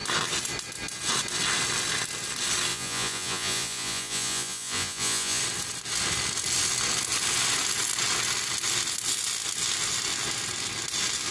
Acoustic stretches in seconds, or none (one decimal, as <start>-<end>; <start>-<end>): 0.0-2.7; 5.4-11.3